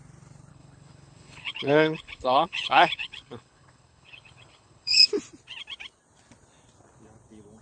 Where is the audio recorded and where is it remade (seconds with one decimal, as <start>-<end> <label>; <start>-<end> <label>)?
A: 0.0-0.5 recorded; 0.5-5.1 remade; 5.1-7.6 recorded